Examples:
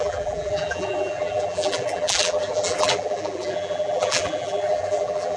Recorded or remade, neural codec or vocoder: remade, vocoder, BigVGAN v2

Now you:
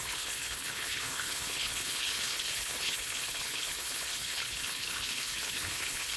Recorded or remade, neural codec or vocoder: remade, codec, HILCodec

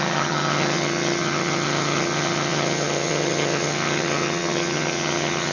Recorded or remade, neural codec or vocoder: remade, vocoder, HiFi-GAN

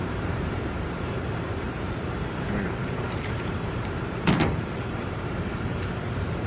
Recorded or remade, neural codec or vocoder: remade, vocoder, BigVGAN v2